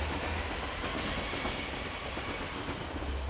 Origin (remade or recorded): recorded